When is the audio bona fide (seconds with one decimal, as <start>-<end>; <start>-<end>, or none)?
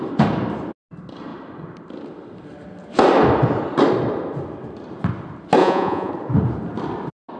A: 0.0-5.6; 6.1-7.4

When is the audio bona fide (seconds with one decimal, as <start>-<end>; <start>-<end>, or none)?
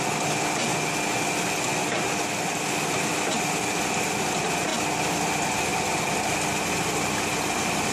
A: 0.0-7.9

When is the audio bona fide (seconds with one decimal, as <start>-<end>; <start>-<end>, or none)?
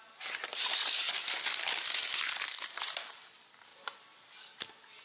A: 0.0-5.0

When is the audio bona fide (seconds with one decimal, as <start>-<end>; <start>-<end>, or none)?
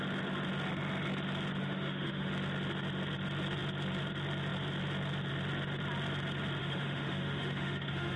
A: 0.0-1.6; 2.3-6.6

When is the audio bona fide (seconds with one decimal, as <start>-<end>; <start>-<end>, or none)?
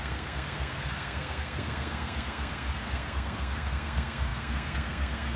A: none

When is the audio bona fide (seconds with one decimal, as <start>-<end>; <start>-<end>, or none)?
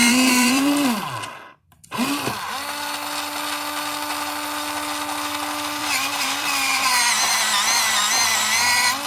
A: 1.0-5.8; 7.0-9.1